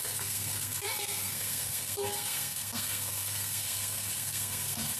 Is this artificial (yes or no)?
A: yes